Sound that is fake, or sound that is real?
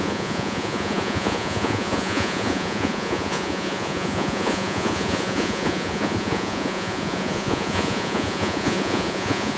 fake